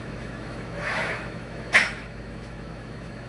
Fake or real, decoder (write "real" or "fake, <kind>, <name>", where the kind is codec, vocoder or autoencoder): fake, autoencoder, DAC-VAE